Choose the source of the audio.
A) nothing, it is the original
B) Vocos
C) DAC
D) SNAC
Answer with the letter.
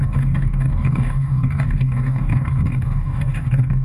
C